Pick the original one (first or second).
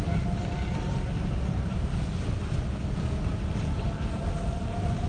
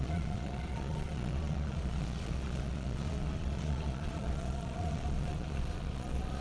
first